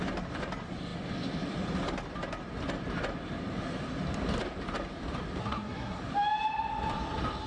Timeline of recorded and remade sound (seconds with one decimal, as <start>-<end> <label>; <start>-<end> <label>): 0.0-5.4 recorded; 5.4-6.0 remade; 6.0-7.5 recorded